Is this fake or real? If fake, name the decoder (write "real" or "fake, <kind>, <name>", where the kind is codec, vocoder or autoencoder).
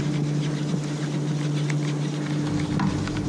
real